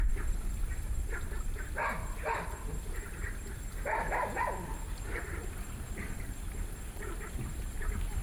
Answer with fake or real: fake